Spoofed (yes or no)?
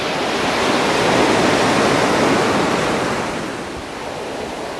no